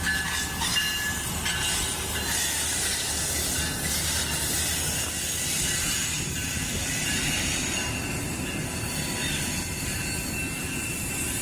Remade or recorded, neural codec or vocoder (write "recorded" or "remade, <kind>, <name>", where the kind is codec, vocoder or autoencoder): recorded